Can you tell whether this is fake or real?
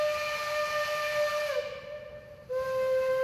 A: real